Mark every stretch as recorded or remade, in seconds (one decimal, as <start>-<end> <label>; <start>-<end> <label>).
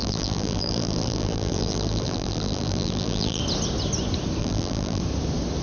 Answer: 0.0-3.4 remade; 3.4-4.4 recorded; 4.4-5.0 remade; 5.0-5.6 recorded